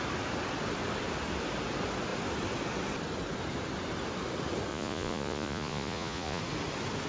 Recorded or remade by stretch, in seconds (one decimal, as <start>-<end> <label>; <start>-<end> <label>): 0.0-4.7 recorded; 4.7-6.4 remade; 6.4-7.1 recorded